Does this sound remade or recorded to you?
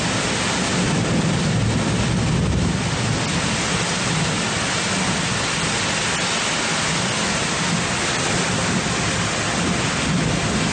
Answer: recorded